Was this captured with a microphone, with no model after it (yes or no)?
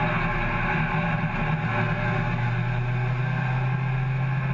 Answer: yes